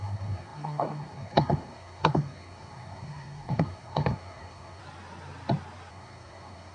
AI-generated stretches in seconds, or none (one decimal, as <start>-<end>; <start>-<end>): 0.0-4.8; 5.9-6.7